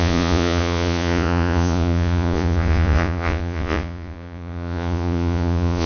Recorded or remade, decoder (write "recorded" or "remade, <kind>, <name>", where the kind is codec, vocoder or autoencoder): remade, vocoder, Vocos